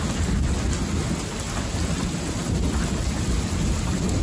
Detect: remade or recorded recorded